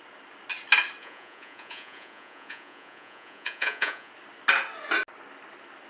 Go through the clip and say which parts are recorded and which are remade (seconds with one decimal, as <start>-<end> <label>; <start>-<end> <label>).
0.0-1.0 recorded; 1.0-4.1 remade; 4.1-5.9 recorded